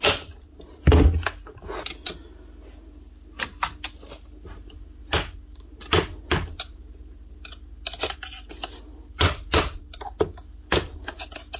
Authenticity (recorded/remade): recorded